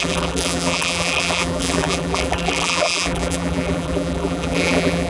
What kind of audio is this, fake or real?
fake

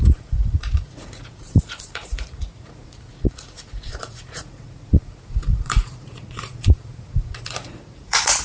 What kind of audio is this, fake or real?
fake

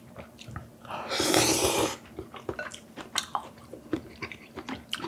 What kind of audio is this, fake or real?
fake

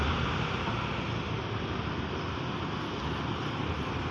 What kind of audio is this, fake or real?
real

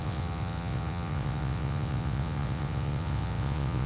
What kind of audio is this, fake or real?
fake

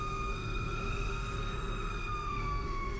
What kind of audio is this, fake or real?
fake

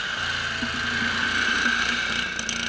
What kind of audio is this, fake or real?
real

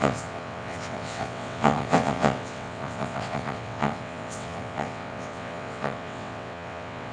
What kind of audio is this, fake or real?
fake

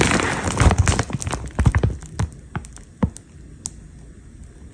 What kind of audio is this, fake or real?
real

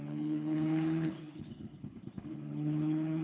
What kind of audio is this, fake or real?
fake